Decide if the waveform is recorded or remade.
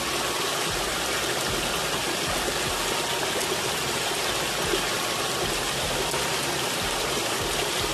recorded